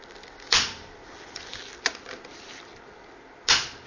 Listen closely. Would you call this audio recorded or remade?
recorded